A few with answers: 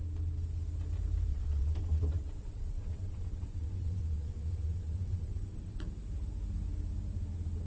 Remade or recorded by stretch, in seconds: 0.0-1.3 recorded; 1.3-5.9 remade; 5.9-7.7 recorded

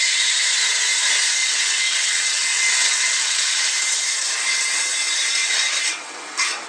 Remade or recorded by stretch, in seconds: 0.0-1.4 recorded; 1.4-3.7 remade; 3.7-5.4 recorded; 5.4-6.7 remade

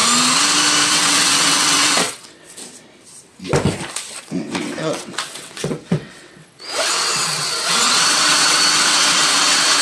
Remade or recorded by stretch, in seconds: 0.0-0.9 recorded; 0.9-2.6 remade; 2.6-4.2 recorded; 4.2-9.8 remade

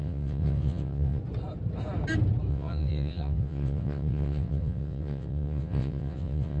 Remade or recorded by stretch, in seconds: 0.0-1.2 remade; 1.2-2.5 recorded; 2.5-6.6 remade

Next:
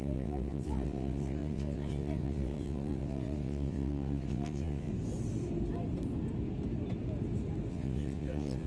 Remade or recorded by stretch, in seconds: 0.0-4.9 remade; 4.9-7.7 recorded; 7.7-8.7 remade